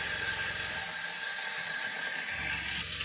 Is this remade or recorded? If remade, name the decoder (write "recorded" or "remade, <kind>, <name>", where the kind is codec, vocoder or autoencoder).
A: recorded